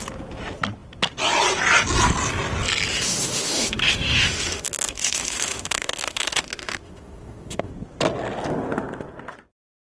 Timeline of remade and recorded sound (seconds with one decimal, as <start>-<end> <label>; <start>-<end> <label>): 0.0-2.9 recorded; 2.9-7.7 remade; 7.7-10.0 recorded